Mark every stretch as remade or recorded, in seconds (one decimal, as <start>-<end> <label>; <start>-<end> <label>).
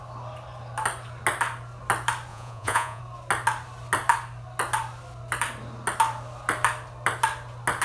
0.0-2.3 recorded; 2.3-3.0 remade; 3.0-7.8 recorded